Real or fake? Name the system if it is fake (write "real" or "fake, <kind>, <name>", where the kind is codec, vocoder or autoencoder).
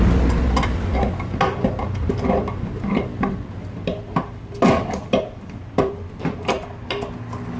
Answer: real